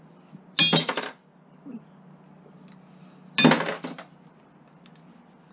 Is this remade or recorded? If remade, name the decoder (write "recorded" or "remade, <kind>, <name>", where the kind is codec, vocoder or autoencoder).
recorded